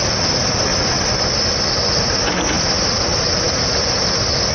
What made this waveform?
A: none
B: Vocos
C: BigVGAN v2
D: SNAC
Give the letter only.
A